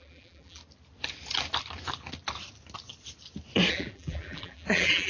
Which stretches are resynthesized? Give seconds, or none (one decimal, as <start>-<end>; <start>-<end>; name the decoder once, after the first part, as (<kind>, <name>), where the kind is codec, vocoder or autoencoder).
0.0-0.6 (vocoder, BigVGAN v2); 3.7-5.1